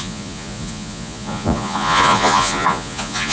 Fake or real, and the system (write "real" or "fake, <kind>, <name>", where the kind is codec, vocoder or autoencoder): fake, vocoder, Vocos